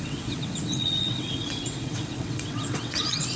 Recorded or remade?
remade